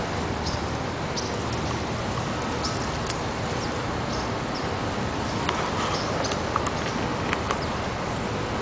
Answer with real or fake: real